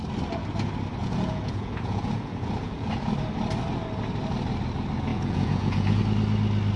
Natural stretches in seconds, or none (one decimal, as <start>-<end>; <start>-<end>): 0.0-1.0; 3.1-5.1; 6.0-6.8